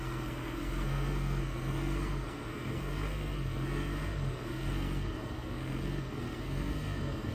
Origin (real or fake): fake